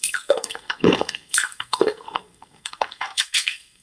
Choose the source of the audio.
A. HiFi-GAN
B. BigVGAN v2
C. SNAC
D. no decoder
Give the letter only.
C